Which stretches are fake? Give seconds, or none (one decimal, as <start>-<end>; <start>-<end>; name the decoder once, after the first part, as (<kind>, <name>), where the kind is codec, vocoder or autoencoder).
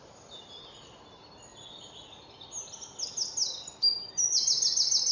none